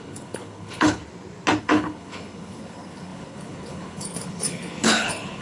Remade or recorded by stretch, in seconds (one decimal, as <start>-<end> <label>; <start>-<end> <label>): 0.0-1.0 remade; 1.0-1.6 recorded; 1.6-5.4 remade